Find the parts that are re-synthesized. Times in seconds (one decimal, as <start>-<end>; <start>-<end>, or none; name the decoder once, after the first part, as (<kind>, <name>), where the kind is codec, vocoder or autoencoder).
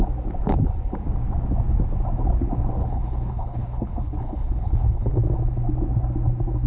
2.8-5.1 (codec, HILCodec)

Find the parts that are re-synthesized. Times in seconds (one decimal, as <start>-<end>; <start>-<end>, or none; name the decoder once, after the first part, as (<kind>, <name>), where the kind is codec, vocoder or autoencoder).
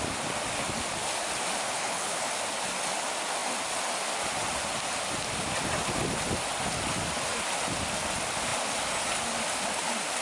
1.7-2.3 (codec, HILCodec)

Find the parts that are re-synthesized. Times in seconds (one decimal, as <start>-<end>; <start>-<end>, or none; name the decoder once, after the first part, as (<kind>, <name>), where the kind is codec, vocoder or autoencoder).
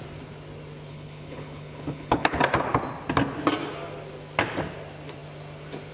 0.9-2.4 (codec, HILCodec)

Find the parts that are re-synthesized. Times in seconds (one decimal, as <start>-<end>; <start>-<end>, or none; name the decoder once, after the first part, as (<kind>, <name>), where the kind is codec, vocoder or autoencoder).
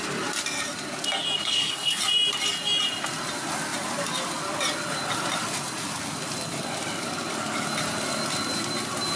1.4-2.0 (codec, HILCodec)